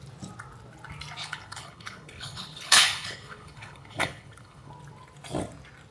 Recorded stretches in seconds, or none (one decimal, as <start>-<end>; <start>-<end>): 0.0-1.2; 4.7-5.9

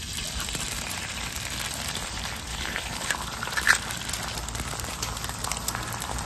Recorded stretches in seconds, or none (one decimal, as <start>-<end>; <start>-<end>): 0.0-2.5; 3.1-6.3